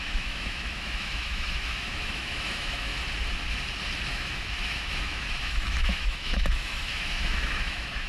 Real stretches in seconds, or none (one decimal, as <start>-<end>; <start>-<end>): 2.9-4.1